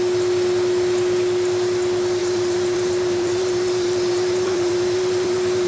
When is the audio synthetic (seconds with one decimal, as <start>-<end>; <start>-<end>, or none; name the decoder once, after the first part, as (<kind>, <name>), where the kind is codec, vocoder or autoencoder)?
2.2-5.7 (vocoder, BigVGAN v2)